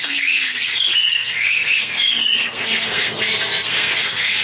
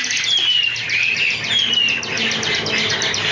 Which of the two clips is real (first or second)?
second